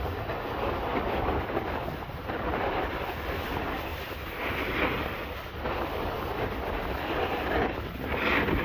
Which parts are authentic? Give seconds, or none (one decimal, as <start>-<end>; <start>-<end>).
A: 0.0-8.6